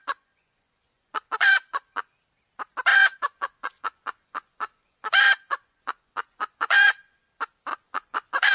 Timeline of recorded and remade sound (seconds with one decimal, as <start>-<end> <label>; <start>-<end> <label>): 0.0-2.2 remade; 2.2-2.9 recorded; 2.9-7.2 remade; 7.2-7.7 recorded; 7.7-8.5 remade